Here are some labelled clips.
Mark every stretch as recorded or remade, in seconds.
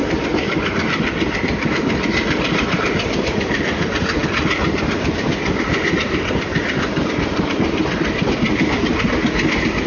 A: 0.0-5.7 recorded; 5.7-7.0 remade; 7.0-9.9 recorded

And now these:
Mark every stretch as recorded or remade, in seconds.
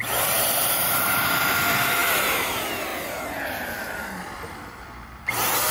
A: 0.0-5.7 remade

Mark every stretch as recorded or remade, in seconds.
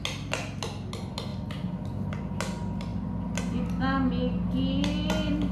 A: 0.0-5.5 recorded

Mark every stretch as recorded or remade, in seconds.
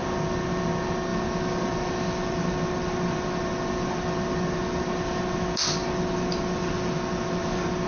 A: 0.0-1.1 recorded; 1.1-5.2 remade; 5.2-5.8 recorded; 5.8-7.5 remade; 7.5-7.9 recorded